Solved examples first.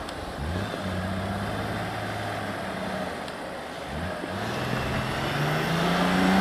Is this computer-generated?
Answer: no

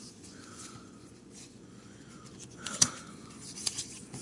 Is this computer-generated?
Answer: yes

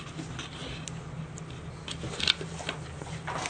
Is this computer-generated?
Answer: no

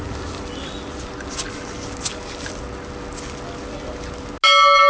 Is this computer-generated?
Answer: no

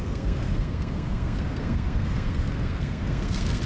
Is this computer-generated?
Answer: yes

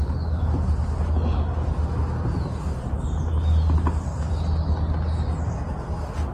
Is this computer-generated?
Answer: no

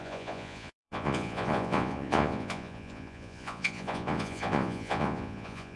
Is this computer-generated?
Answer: yes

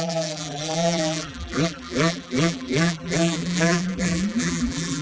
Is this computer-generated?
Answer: yes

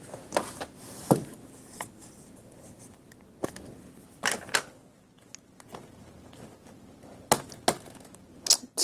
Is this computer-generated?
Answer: no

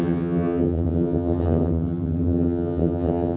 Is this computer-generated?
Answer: yes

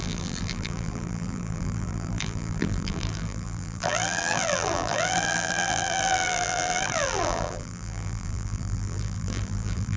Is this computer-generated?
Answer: yes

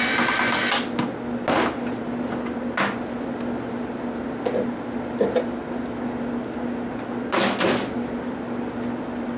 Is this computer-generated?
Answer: no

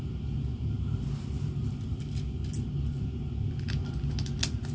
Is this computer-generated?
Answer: no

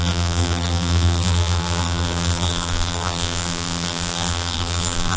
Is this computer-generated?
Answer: yes